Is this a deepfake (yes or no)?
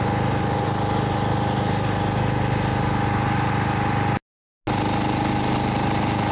no